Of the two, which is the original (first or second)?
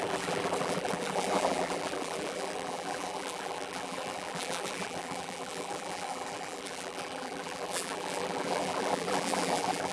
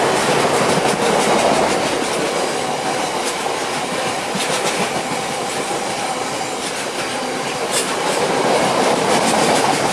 second